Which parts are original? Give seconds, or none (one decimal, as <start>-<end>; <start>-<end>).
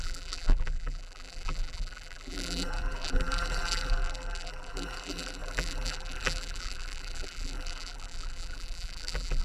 none